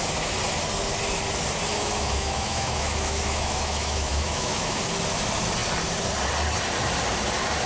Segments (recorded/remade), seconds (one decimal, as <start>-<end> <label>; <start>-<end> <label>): 0.0-1.7 recorded; 1.7-4.8 remade; 4.8-7.7 recorded